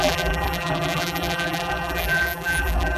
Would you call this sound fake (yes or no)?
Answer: yes